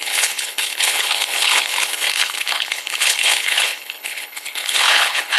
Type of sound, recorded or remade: remade